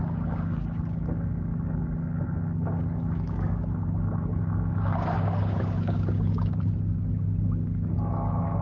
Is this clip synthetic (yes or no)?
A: yes